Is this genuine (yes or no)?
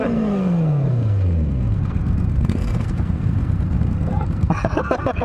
no